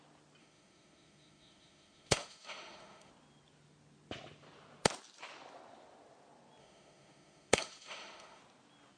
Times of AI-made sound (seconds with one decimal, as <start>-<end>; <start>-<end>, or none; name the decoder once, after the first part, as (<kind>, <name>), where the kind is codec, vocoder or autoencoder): 0.4-3.1 (autoencoder, DAC-VAE); 6.6-8.4